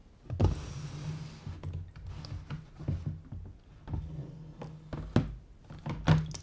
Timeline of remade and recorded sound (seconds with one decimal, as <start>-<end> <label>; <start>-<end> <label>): 0.0-6.4 recorded